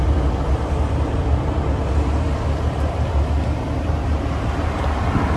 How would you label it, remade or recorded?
recorded